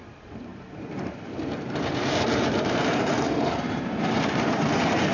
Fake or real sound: fake